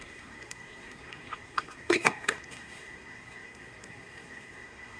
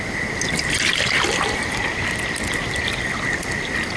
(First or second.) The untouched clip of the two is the second